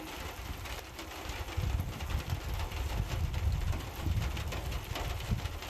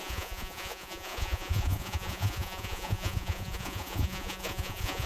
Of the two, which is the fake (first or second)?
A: second